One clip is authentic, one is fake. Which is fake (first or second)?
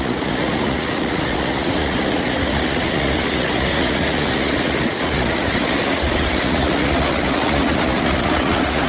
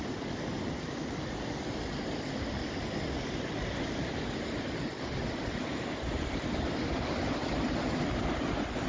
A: first